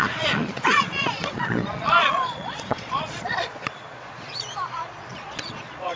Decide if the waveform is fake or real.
fake